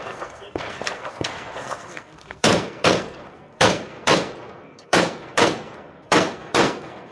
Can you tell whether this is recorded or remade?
remade